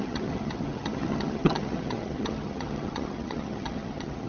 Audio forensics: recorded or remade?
remade